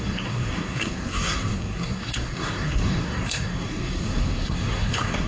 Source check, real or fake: fake